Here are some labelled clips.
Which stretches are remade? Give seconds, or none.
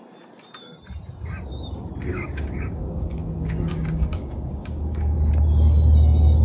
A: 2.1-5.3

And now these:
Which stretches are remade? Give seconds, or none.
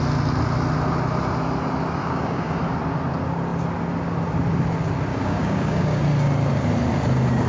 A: 2.0-2.6; 5.1-6.0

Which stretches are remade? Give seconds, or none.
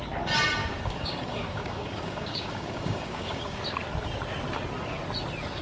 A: 0.6-3.6